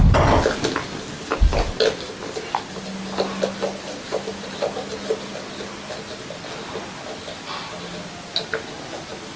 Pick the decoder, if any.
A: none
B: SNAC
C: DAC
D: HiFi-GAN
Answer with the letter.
A